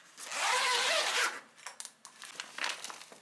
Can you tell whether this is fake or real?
real